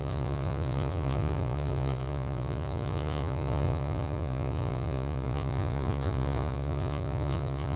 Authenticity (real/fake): fake